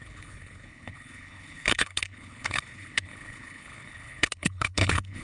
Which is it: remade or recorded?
remade